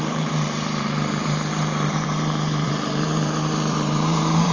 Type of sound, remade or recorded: remade